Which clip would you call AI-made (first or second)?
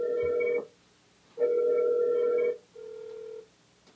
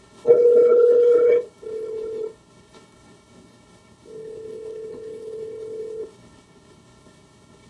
second